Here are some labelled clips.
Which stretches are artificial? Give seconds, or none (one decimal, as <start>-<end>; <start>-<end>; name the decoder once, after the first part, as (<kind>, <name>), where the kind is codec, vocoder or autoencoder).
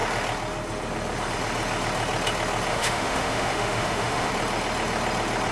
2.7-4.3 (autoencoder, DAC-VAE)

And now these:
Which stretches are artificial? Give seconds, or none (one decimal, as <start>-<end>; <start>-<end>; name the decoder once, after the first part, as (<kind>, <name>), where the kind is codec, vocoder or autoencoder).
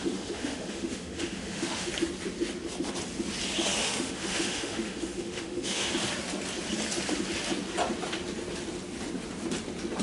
0.0-1.9 (autoencoder, DAC-VAE); 3.8-5.9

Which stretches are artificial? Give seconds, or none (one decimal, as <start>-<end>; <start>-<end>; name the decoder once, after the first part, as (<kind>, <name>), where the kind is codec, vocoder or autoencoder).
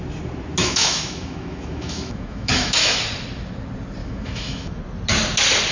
0.6-3.0 (autoencoder, DAC-VAE); 4.0-4.8